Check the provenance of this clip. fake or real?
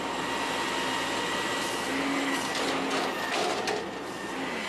real